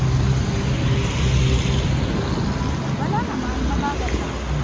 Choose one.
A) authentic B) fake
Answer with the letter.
A